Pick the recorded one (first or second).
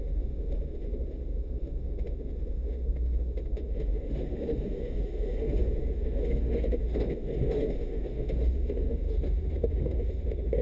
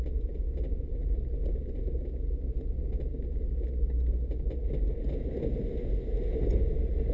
second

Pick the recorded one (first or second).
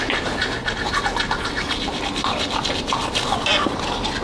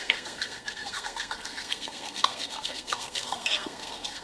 first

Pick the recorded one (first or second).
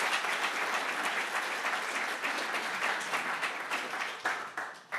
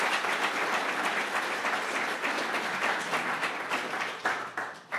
first